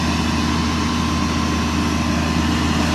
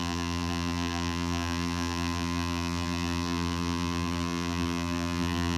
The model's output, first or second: second